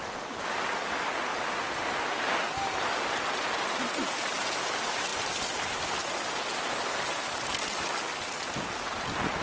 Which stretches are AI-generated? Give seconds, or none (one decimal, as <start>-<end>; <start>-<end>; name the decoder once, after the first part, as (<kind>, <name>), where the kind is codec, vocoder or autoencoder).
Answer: 1.3-2.0 (vocoder, BigVGAN v2)